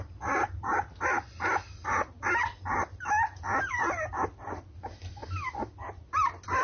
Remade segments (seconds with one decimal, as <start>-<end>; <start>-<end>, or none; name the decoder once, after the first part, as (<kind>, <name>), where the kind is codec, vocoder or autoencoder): 0.0-0.7 (vocoder, BigVGAN v2); 3.7-6.6